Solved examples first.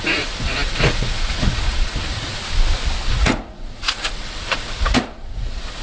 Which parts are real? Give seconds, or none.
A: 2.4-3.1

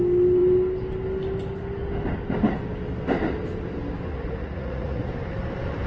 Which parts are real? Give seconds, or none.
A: 0.0-4.1; 5.1-5.9

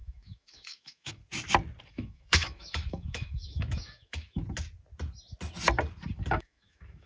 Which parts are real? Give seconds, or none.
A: 1.2-1.9; 4.4-6.3

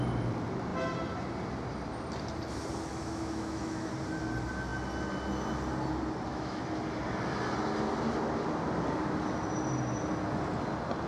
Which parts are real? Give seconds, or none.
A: 0.0-2.9; 3.9-6.3; 6.8-11.1

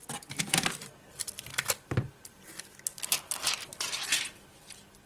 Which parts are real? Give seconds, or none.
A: 0.0-5.1

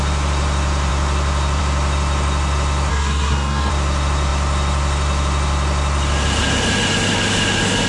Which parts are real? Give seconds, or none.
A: 0.0-2.9; 3.7-7.9